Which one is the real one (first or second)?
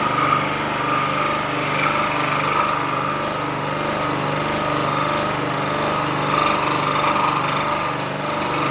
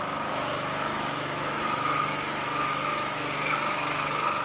first